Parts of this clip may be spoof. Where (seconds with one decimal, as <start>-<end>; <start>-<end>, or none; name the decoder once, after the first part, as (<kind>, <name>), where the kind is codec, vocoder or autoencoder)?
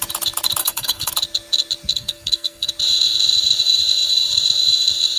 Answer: 0.6-1.1 (codec, SNAC); 1.9-2.7